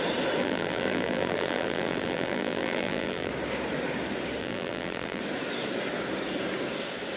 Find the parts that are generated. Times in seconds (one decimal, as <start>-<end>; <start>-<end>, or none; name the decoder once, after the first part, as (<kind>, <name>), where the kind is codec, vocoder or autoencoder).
0.4-3.3 (vocoder, BigVGAN v2); 4.4-5.2